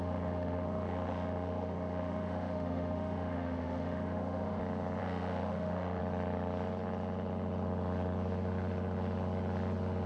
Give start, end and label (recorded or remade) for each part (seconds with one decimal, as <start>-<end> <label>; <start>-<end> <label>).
0.0-4.6 remade; 4.6-5.0 recorded; 5.0-6.0 remade; 6.0-10.1 recorded